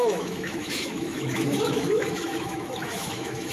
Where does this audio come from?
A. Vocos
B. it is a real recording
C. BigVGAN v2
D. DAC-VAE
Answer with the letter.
D